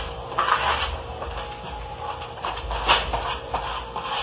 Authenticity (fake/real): real